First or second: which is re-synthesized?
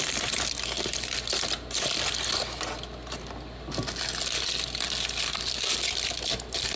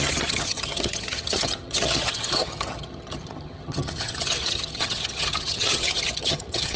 second